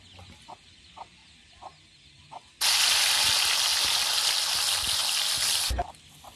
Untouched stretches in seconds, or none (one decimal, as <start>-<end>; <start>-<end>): 0.0-6.4